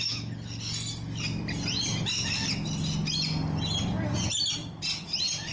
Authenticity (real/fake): real